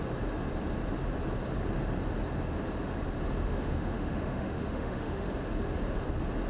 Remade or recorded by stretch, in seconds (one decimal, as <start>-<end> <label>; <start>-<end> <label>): 0.0-3.4 recorded; 3.4-5.3 remade; 5.3-6.5 recorded